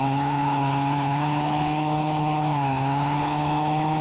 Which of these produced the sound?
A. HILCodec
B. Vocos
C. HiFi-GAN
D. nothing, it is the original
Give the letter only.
A